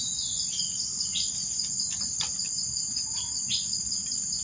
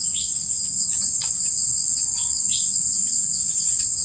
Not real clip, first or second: second